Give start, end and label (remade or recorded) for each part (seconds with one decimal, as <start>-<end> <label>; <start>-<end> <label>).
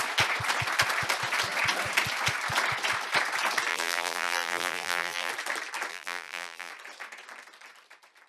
0.0-3.7 recorded; 3.7-5.3 remade; 5.3-5.9 recorded; 5.9-6.7 remade; 6.7-8.3 recorded